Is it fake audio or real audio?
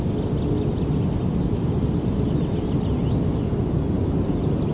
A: real